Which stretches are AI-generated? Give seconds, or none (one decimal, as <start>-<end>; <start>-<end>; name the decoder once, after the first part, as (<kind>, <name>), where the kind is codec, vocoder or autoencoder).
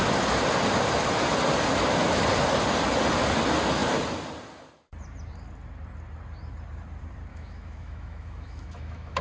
7.3-9.2 (autoencoder, DAC-VAE)